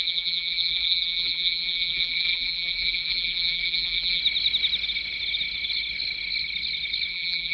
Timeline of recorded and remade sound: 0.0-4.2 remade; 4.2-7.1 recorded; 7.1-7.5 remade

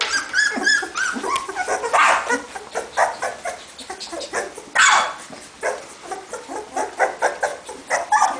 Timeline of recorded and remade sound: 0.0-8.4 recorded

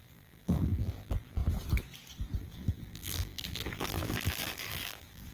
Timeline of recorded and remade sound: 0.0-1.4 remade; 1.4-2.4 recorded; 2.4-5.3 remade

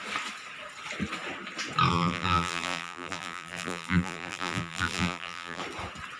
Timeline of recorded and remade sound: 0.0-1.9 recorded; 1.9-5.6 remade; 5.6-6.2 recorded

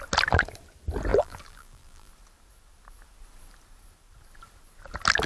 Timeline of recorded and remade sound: 0.0-1.1 recorded; 1.1-2.1 remade; 2.1-5.3 recorded